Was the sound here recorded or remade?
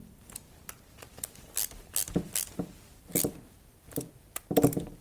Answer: recorded